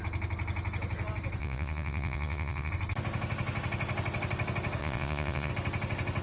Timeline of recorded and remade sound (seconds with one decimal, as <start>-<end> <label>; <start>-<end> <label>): 0.0-1.4 recorded; 1.4-2.7 remade; 2.7-4.8 recorded; 4.8-5.5 remade; 5.5-6.2 recorded